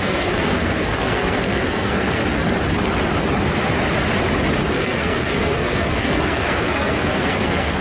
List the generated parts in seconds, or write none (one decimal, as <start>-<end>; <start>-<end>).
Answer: 0.0-2.2; 4.7-7.8